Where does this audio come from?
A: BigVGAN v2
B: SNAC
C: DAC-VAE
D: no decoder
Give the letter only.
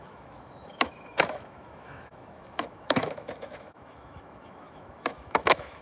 C